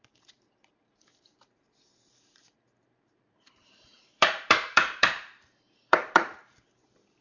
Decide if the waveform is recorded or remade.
remade